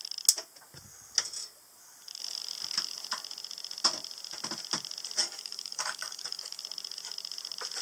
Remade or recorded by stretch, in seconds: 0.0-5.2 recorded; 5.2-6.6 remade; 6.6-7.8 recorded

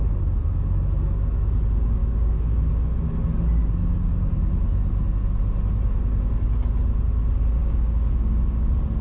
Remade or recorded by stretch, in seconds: 0.0-2.0 recorded; 2.0-2.7 remade; 2.7-7.6 recorded; 7.6-8.1 remade; 8.1-9.0 recorded

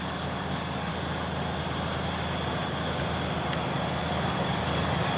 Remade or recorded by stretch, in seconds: 0.0-0.9 remade; 0.9-4.0 recorded; 4.0-5.2 remade

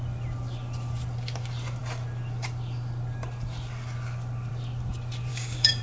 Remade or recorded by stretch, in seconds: 0.0-5.3 recorded; 5.3-5.8 remade

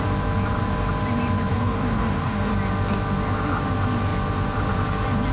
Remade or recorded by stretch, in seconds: 0.0-1.5 recorded; 1.5-2.5 remade; 2.5-5.3 recorded

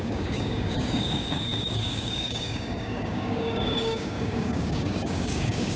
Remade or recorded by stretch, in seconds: 0.0-5.8 remade